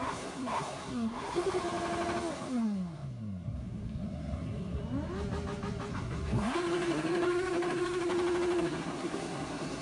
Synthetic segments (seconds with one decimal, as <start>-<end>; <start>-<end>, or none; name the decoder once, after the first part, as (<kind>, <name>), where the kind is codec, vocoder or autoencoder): 0.0-1.6 (codec, SNAC); 2.3-4.8; 5.9-8.1; 8.6-9.8